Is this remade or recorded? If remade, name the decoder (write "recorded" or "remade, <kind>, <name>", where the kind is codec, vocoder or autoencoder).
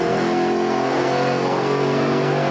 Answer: remade, codec, SNAC